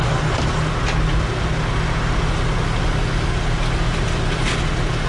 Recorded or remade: recorded